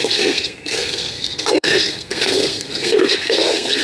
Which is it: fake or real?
fake